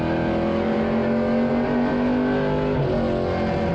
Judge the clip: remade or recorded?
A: recorded